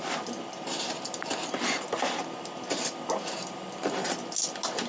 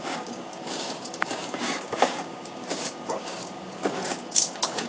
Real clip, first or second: first